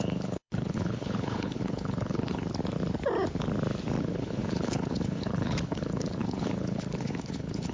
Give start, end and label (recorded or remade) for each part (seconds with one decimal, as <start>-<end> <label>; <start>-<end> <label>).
0.0-2.4 remade; 2.4-4.0 recorded; 4.0-7.7 remade

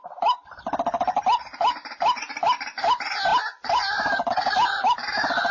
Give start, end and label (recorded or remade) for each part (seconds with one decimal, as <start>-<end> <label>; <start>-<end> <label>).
0.0-5.5 recorded

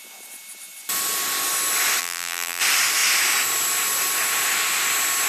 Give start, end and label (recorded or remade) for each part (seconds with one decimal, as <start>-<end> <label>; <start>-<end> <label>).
0.0-2.0 recorded; 2.0-2.6 remade; 2.6-5.3 recorded

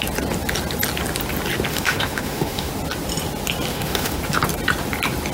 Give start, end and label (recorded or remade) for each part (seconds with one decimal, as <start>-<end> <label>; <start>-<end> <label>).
0.0-1.7 recorded; 1.7-2.7 remade; 2.7-3.7 recorded; 3.7-4.2 remade; 4.2-5.3 recorded

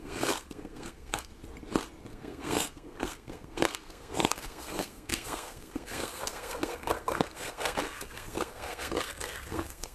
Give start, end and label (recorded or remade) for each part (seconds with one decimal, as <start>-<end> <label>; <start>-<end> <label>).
0.0-1.3 remade; 1.3-2.1 recorded; 2.1-9.9 remade